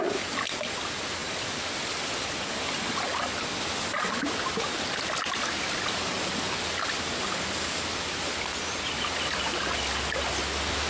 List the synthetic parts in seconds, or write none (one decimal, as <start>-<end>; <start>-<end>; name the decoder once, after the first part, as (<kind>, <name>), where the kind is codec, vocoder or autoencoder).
none